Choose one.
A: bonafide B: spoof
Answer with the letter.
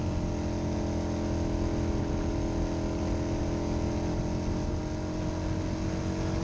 A